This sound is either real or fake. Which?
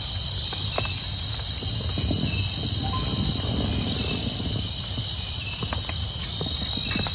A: real